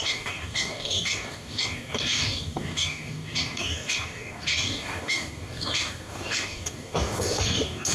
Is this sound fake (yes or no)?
yes